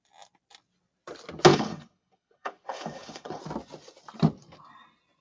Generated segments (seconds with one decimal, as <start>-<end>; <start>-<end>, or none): 1.5-3.4